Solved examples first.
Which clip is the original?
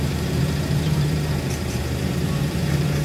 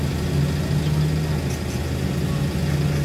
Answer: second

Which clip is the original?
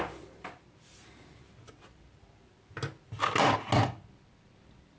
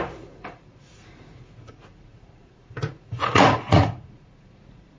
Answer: first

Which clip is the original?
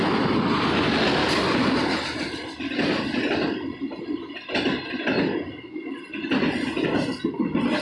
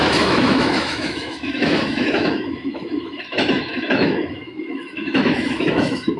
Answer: first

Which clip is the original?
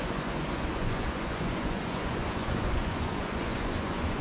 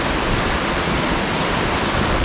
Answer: second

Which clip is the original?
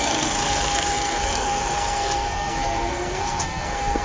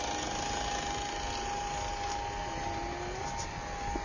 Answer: second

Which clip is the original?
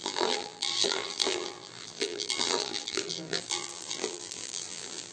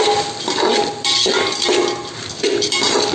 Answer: second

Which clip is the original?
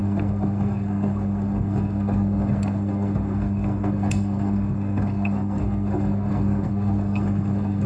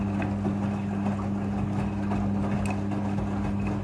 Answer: second